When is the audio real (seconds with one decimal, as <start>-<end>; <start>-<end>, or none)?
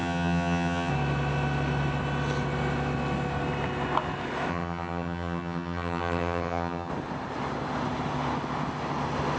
0.9-4.5; 6.9-9.4